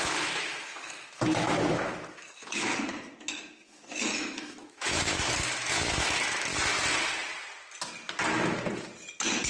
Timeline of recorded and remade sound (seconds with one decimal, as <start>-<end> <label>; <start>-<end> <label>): 0.0-6.5 remade; 6.5-9.5 recorded